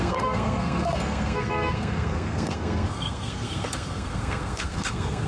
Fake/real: fake